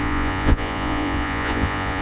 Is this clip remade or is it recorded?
remade